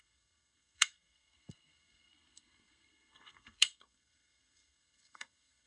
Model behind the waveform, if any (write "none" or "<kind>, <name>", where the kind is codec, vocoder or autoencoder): codec, SNAC